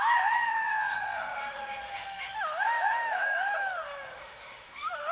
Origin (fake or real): fake